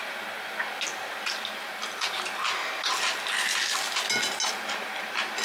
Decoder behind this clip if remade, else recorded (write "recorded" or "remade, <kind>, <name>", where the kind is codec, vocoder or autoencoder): recorded